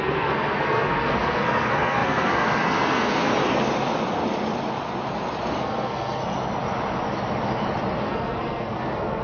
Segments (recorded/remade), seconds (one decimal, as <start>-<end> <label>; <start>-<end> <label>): 0.0-3.3 remade; 3.3-5.6 recorded; 5.6-6.2 remade; 6.2-8.0 recorded; 8.0-9.2 remade